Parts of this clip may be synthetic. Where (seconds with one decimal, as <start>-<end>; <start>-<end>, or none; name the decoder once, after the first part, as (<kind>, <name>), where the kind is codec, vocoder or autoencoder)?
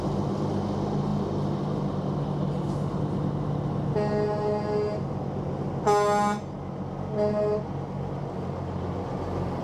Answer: none